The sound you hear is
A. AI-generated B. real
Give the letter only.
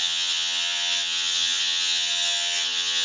A